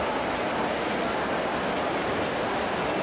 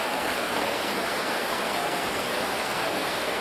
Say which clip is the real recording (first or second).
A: first